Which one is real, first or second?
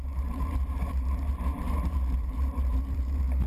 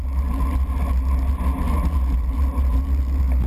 second